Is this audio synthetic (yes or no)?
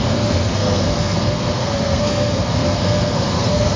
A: yes